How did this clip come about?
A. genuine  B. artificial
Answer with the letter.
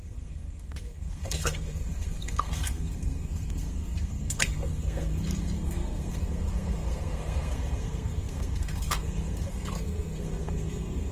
B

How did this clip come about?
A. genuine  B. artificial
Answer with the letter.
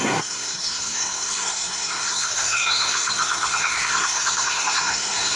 B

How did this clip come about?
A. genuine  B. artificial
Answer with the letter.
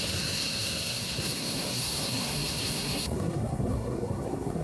B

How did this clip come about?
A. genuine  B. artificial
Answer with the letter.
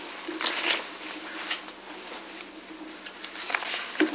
A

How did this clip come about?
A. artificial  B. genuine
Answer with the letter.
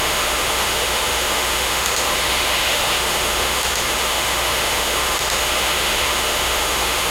A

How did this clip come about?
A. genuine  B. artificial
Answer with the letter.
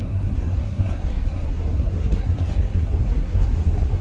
B